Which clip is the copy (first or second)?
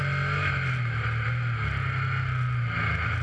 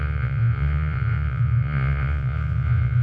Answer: second